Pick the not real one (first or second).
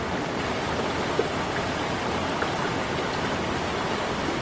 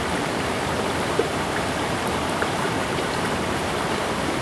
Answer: second